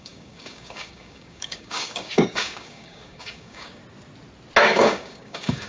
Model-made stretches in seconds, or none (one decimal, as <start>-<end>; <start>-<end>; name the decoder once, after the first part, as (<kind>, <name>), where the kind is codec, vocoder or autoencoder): 0.0-3.8 (codec, DAC); 4.6-5.7